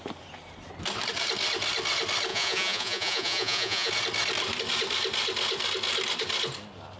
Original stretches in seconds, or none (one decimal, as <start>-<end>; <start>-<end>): 0.0-2.3; 3.9-7.0